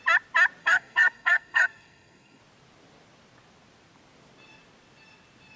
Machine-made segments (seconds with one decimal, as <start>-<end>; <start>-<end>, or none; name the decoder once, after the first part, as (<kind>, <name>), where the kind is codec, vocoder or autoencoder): 0.6-2.4 (codec, SNAC)